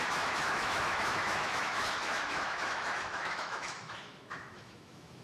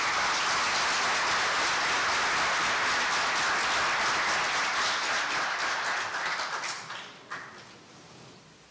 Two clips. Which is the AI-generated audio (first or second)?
first